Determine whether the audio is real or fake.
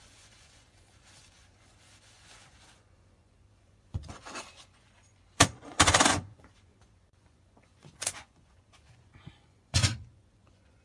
fake